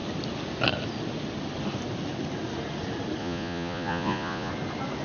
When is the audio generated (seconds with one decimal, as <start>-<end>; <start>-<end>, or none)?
3.2-4.5